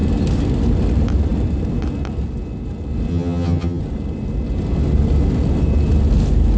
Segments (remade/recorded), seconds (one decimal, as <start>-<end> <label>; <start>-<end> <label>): 0.0-3.1 recorded; 3.1-3.8 remade; 3.8-6.6 recorded